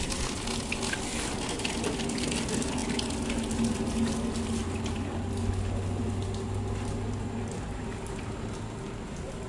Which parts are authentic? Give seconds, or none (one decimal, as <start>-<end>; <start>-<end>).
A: 0.0-9.5